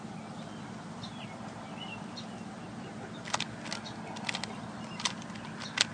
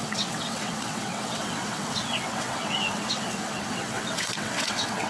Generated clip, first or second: second